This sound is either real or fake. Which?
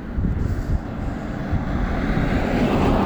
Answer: real